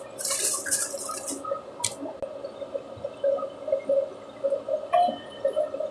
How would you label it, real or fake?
real